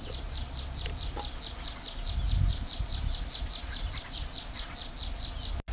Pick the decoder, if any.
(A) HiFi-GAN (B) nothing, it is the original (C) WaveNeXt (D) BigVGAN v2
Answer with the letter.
B